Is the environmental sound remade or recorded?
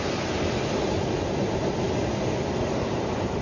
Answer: recorded